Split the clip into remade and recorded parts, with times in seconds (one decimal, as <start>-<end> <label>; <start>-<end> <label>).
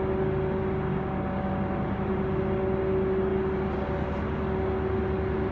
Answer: 0.0-0.9 recorded; 0.9-1.5 remade; 1.5-5.5 recorded